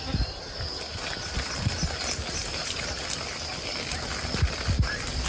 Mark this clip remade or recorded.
recorded